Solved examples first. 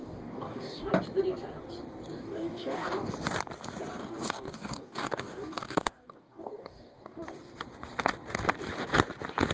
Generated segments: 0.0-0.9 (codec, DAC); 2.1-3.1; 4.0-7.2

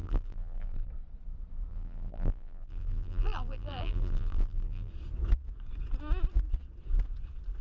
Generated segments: 0.0-0.9 (vocoder, BigVGAN v2); 1.7-4.9

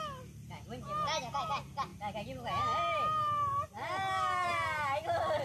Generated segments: none

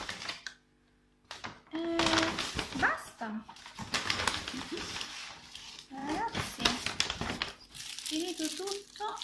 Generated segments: 3.0-3.6 (vocoder, Vocos)

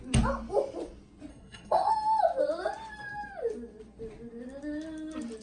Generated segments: 1.3-1.9 (codec, SNAC)

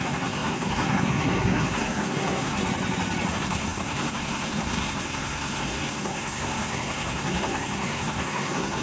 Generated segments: 0.0-2.6 (codec, SNAC); 3.3-8.8